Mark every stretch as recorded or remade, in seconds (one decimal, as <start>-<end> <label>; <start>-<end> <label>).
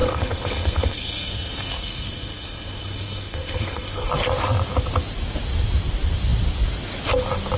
0.0-4.1 remade; 4.1-7.6 recorded